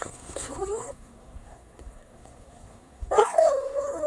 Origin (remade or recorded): remade